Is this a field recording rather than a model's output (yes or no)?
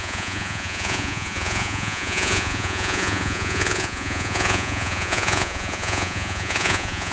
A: no